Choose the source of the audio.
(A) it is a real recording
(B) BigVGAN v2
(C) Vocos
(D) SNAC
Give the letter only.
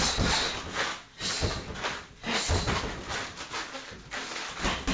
A